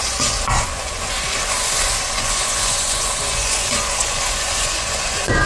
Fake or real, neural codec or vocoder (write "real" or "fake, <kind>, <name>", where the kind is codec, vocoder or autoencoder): fake, vocoder, Vocos